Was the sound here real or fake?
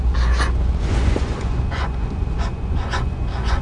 fake